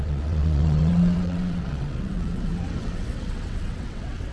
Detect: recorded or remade remade